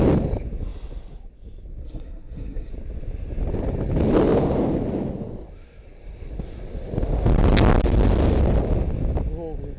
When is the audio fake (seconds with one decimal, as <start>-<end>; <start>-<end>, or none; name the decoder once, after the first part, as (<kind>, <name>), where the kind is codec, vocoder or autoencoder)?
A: 1.8-2.7 (codec, SNAC)